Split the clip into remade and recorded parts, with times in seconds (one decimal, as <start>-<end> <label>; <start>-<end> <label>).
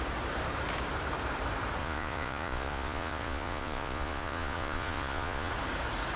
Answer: 0.0-1.8 recorded; 1.8-5.5 remade; 5.5-6.2 recorded